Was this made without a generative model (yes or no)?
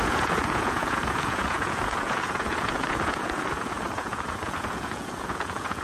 no